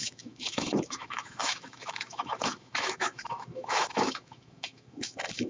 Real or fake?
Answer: fake